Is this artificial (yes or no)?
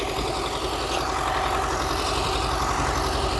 no